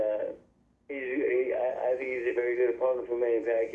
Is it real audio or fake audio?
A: real